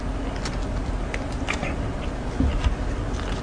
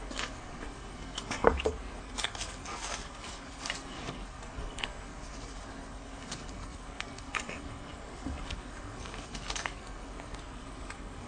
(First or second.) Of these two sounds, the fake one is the second